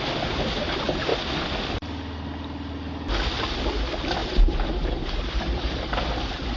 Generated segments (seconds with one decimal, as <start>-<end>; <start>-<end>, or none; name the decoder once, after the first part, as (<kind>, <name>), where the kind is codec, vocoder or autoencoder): 4.2-5.9 (vocoder, BigVGAN v2)